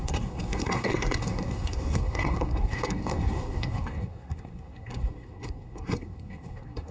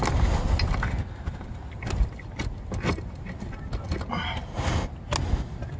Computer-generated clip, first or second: first